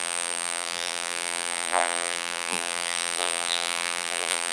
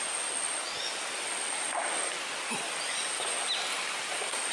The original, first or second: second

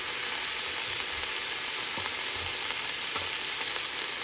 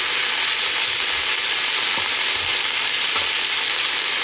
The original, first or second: first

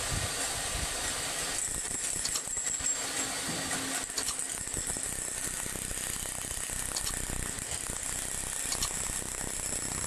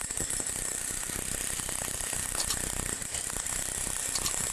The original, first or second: first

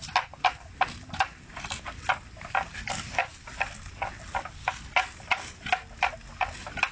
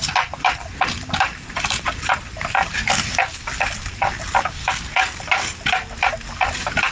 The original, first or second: first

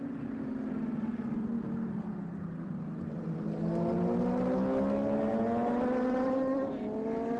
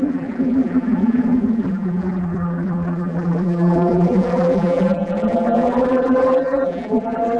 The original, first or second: first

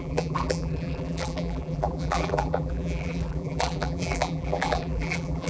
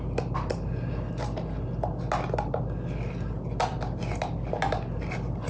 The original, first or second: second